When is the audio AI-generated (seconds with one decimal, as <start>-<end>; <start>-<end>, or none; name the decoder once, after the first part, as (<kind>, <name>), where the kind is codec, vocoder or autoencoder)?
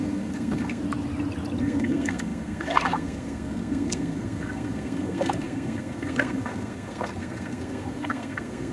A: 0.0-0.8 (codec, SNAC); 1.6-8.7